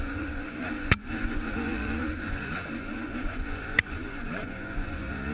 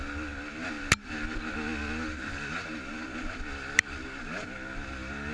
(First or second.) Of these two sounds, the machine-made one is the first